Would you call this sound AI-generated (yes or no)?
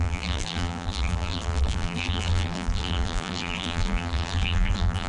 yes